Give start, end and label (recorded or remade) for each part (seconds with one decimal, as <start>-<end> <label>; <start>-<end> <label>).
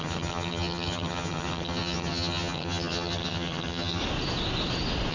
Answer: 0.0-4.0 remade; 4.0-5.1 recorded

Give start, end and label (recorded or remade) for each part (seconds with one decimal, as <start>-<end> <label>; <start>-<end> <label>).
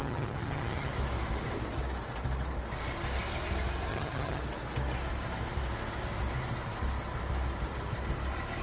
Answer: 0.0-0.9 remade; 0.9-3.9 recorded; 3.9-4.4 remade; 4.4-8.6 recorded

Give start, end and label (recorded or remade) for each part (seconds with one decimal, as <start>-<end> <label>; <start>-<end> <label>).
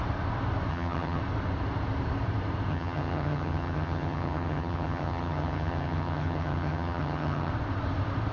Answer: 0.0-0.7 recorded; 0.7-1.2 remade; 1.2-2.7 recorded; 2.7-7.5 remade; 7.5-8.3 recorded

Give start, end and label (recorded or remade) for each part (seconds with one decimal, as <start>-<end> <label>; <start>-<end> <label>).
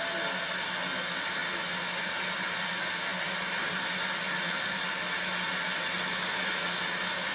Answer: 0.0-7.3 recorded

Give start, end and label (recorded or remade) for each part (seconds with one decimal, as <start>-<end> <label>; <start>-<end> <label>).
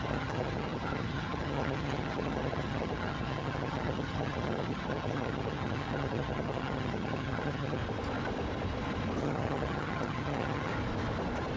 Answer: 0.0-7.8 remade; 7.8-9.2 recorded; 9.2-10.7 remade; 10.7-11.6 recorded